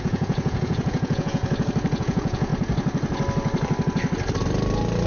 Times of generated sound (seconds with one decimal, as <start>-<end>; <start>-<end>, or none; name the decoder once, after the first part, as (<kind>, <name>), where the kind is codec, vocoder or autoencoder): 0.0-1.4 (vocoder, Vocos); 2.0-2.5